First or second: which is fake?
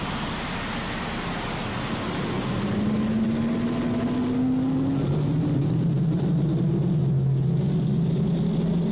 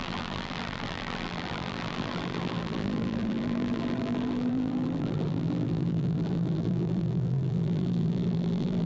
second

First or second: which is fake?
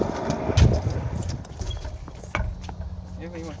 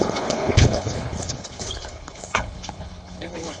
second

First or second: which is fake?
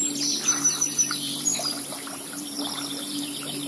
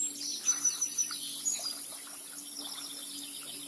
first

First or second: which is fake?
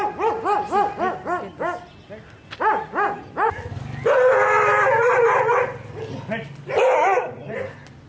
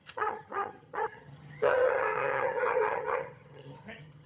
second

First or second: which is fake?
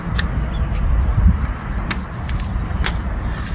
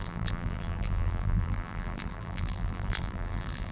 second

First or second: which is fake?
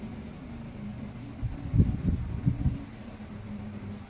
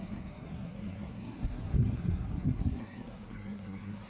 second